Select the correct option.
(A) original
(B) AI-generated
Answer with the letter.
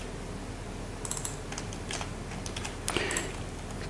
A